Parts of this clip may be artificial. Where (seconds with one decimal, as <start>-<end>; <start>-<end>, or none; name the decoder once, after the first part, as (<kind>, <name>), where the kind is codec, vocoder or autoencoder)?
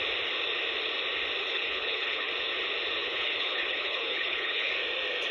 1.4-2.3 (codec, HILCodec); 3.0-4.7